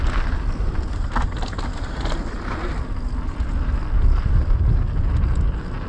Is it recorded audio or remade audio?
recorded